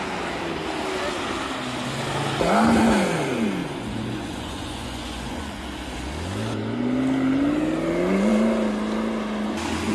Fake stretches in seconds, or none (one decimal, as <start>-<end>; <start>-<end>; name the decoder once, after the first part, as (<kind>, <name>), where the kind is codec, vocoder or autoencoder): 3.6-5.6 (vocoder, Vocos)